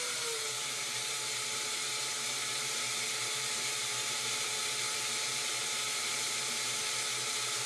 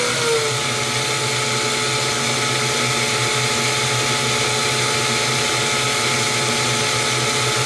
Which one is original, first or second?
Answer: second